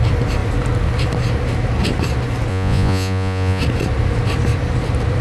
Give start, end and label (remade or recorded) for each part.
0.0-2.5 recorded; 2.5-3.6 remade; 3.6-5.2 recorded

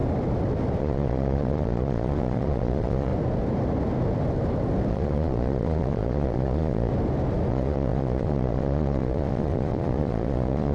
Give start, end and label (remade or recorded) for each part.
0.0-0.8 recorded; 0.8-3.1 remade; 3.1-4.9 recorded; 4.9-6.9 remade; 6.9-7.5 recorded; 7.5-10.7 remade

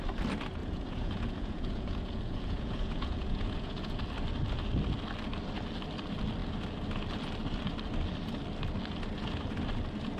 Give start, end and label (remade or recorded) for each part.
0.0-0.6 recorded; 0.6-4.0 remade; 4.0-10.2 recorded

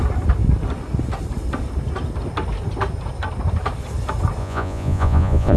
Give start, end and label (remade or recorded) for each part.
0.0-4.4 recorded; 4.4-5.6 remade

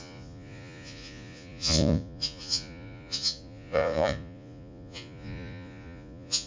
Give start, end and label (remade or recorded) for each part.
0.0-6.5 remade

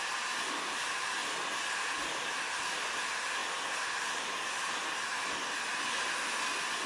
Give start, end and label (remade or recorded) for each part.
0.0-6.9 recorded